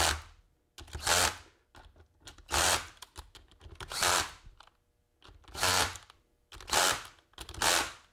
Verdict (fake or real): real